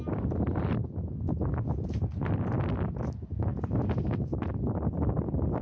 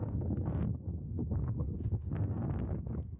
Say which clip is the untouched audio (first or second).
first